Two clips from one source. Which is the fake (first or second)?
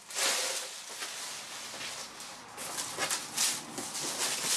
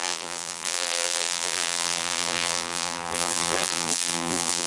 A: second